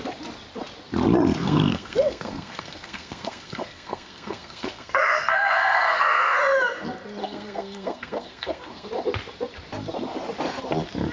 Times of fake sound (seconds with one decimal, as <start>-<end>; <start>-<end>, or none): 1.4-6.4; 7.2-8.9